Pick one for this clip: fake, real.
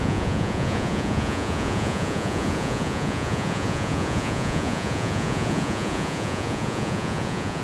fake